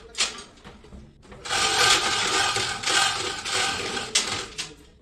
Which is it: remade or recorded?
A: recorded